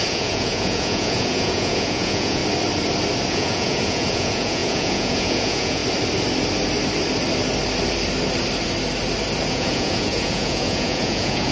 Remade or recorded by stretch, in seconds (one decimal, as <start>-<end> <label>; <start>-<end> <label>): 0.0-2.4 remade; 2.4-3.3 recorded; 3.3-5.8 remade; 5.8-9.5 recorded; 9.5-11.5 remade